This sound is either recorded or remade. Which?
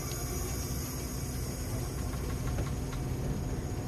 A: recorded